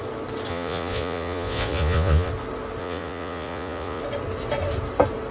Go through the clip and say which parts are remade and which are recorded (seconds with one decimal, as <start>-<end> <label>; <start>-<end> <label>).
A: 0.0-0.5 recorded; 0.5-2.3 remade; 2.3-2.8 recorded; 2.8-4.0 remade; 4.0-5.3 recorded